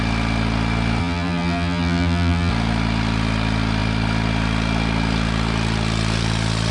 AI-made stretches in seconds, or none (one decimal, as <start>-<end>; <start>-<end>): 1.0-2.5